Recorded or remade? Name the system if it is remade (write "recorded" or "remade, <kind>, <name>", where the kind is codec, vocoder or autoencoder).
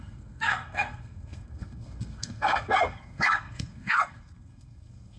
remade, codec, SNAC